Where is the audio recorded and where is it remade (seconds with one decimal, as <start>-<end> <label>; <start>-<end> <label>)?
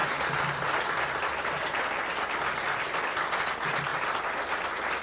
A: 0.0-2.2 recorded; 2.2-3.9 remade; 3.9-4.5 recorded; 4.5-5.0 remade